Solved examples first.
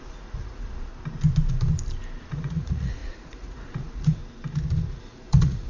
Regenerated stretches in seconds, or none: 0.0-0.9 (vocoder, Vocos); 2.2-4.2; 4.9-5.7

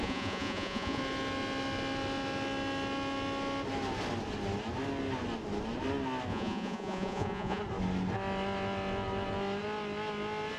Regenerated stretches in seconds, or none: 0.0-1.0 (vocoder, Vocos); 6.3-7.6

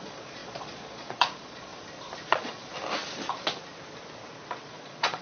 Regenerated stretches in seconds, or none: 0.0-1.7 (vocoder, Vocos); 2.2-2.7; 4.7-5.2

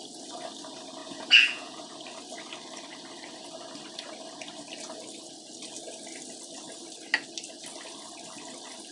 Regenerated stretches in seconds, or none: 1.0-1.9 (vocoder, Vocos)

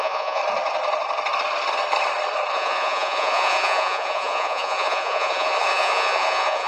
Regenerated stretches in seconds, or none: 0.0-0.4 (vocoder, Vocos); 2.5-6.7

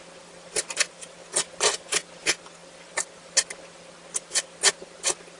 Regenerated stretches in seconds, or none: none